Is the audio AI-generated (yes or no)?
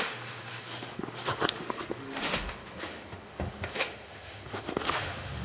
yes